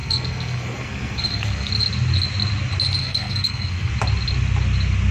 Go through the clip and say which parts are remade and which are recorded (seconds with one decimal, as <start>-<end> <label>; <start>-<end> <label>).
0.0-1.7 remade; 1.7-3.0 recorded; 3.0-3.9 remade; 3.9-5.1 recorded